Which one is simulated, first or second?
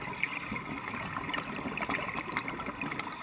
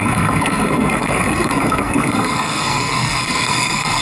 second